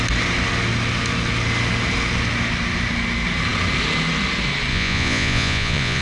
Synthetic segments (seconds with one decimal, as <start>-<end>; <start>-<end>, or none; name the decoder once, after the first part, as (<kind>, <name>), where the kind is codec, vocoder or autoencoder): 4.7-6.0 (vocoder, Vocos)